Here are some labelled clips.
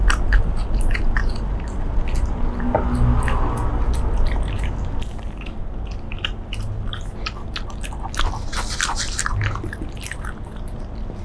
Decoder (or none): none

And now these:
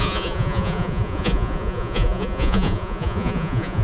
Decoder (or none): vocoder, Vocos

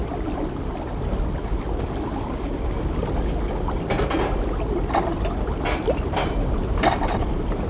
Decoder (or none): none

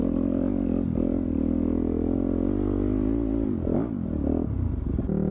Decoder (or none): none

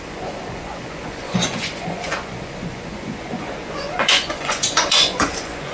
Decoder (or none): vocoder, Vocos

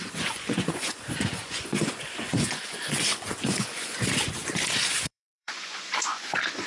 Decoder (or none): vocoder, Vocos